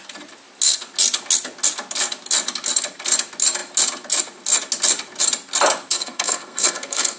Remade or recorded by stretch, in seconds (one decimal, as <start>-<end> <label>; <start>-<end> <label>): 0.0-5.9 recorded; 5.9-7.2 remade